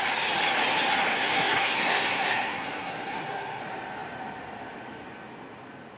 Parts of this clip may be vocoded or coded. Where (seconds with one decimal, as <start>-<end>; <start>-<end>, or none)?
1.1-3.6